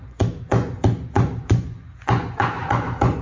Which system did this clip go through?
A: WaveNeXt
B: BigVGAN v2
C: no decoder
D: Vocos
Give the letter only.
D